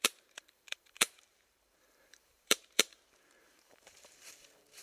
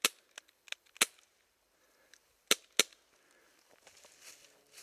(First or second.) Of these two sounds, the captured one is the second